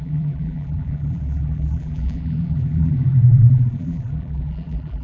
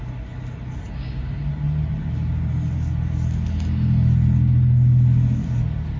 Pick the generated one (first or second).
first